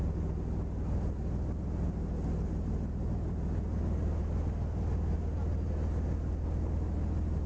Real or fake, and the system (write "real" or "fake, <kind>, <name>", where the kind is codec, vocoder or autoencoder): real